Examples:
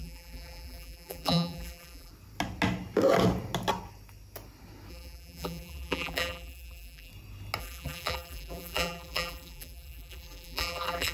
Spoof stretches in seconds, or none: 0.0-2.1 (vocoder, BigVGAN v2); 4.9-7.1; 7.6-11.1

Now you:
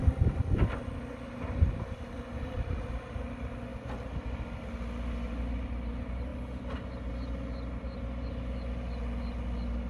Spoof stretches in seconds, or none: none